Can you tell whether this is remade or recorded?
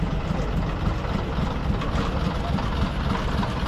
recorded